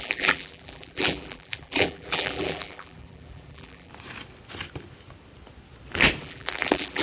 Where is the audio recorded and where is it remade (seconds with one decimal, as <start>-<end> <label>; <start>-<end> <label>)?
0.0-3.9 remade; 3.9-6.2 recorded; 6.2-7.0 remade

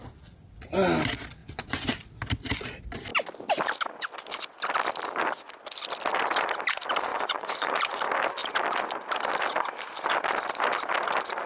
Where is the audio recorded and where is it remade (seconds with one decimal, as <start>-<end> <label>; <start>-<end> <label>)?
0.0-1.4 recorded; 1.4-1.9 remade; 1.9-7.1 recorded; 7.1-8.0 remade; 8.0-11.5 recorded

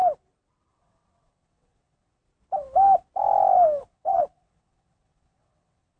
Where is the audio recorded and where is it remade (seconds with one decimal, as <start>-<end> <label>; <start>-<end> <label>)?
0.0-0.7 recorded; 0.7-2.2 remade; 2.2-3.8 recorded; 3.8-6.0 remade

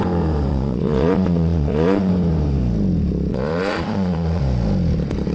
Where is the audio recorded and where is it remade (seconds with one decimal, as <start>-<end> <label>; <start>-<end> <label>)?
0.0-0.5 recorded; 0.5-2.1 remade; 2.1-3.3 recorded; 3.3-4.4 remade; 4.4-5.3 recorded

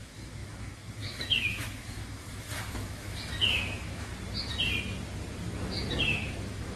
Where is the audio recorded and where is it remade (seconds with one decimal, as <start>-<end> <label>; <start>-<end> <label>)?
0.0-4.1 remade; 4.1-6.0 recorded; 6.0-6.8 remade

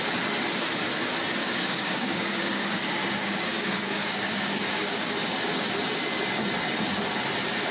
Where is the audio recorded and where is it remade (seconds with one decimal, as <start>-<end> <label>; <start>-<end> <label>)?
0.0-1.4 recorded; 1.4-5.4 remade; 5.4-7.7 recorded

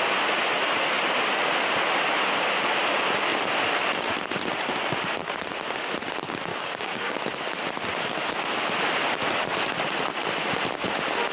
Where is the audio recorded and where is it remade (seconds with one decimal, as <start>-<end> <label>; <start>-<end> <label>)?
0.0-6.5 recorded; 6.5-7.2 remade; 7.2-11.3 recorded

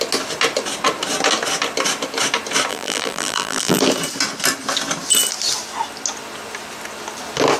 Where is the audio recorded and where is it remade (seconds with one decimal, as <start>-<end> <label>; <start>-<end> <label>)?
0.0-2.7 recorded; 2.7-3.8 remade; 3.8-7.6 recorded